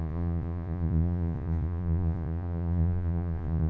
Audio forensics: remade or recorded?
remade